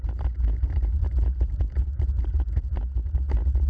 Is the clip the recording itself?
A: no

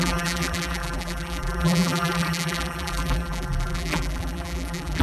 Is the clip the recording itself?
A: no